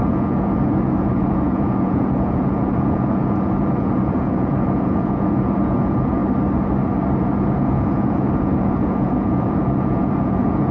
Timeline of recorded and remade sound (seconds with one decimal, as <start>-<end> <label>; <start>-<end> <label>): 0.0-6.2 remade; 6.2-7.2 recorded; 7.2-10.7 remade